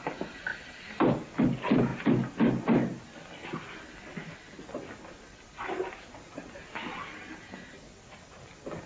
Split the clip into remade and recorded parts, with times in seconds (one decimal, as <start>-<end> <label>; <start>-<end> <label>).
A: 0.0-8.9 recorded